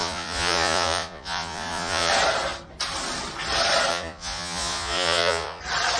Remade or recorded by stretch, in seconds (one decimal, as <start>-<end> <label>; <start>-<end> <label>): 0.0-2.1 remade; 2.1-3.9 recorded; 3.9-5.6 remade; 5.6-6.0 recorded